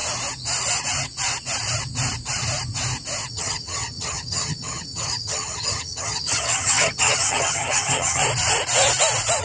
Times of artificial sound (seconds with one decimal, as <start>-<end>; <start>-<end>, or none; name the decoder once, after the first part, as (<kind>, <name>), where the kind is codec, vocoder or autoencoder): 3.3-8.2 (vocoder, HiFi-GAN)